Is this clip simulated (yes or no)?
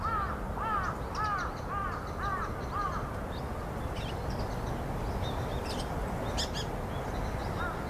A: no